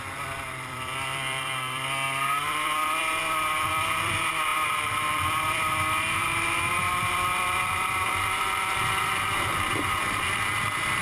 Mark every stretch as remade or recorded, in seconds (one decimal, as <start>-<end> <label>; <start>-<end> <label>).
0.0-11.0 remade